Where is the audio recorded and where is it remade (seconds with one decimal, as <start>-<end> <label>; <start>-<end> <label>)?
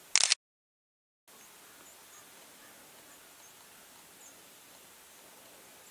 0.0-2.0 recorded; 2.0-2.7 remade; 2.7-4.3 recorded; 4.3-4.9 remade; 4.9-5.9 recorded